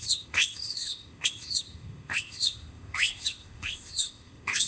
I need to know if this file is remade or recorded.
remade